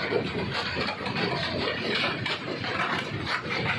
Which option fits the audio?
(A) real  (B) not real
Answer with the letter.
B